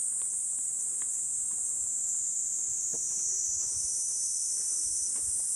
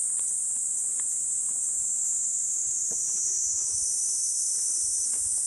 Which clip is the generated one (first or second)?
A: second